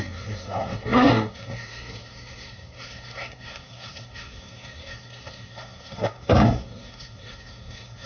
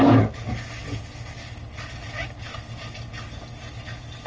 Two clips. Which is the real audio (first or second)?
second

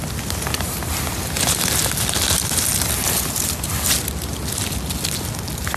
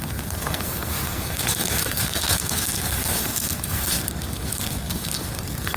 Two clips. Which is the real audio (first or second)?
first